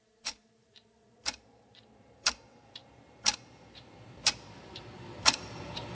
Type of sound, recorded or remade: remade